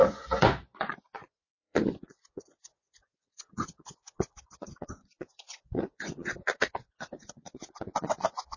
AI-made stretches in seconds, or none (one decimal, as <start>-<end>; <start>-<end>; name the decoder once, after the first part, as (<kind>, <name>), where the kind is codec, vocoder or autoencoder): 0.0-8.6 (vocoder, Vocos)